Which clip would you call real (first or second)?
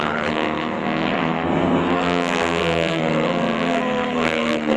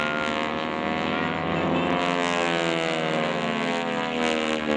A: second